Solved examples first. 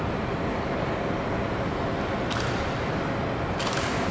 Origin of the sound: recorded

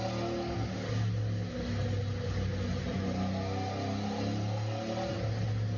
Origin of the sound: recorded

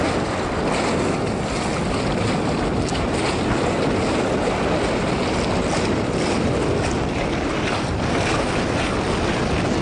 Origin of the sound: recorded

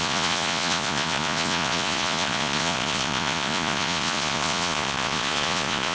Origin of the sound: remade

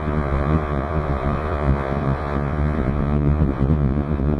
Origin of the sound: remade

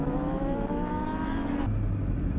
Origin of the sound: recorded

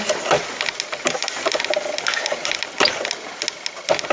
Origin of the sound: recorded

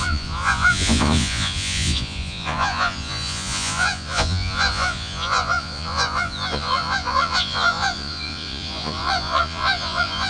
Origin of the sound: remade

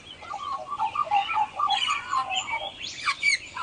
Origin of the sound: remade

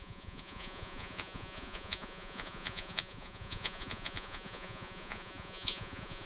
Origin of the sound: remade